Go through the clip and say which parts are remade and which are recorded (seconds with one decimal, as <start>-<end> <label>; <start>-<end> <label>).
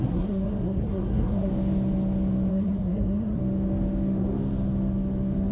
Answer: 0.0-1.5 remade; 1.5-2.5 recorded; 2.5-3.4 remade; 3.4-5.5 recorded